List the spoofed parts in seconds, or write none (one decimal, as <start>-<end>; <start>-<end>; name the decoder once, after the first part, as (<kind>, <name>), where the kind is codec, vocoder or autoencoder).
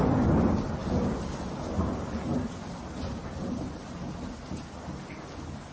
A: none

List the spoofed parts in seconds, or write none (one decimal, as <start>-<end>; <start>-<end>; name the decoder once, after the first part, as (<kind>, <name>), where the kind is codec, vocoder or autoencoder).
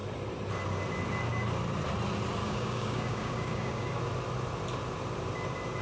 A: 2.4-4.0 (codec, DAC)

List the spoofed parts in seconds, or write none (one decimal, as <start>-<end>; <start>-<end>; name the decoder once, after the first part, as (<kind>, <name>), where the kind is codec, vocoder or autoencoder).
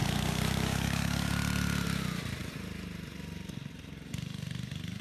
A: 0.0-1.3 (codec, DAC)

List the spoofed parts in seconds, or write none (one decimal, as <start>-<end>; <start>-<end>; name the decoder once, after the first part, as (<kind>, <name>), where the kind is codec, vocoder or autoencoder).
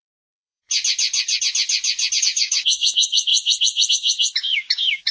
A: 0.0-0.6 (codec, DAC); 2.2-3.3; 3.9-5.1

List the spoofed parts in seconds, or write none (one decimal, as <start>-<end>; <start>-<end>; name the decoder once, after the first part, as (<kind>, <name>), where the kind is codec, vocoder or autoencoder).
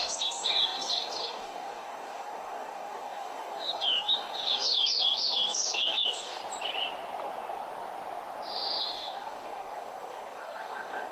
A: 0.0-6.4 (codec, DAC); 8.8-11.1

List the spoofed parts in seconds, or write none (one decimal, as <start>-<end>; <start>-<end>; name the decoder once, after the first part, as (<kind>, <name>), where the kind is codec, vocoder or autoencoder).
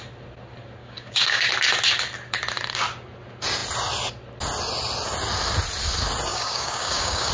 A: 0.8-1.5 (codec, DAC); 6.3-7.3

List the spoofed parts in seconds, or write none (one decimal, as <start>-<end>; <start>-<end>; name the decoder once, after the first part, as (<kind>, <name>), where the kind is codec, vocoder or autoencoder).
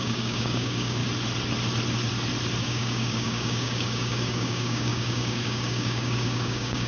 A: 0.0-1.0 (codec, DAC); 2.6-6.9